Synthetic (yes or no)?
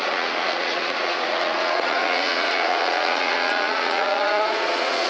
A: yes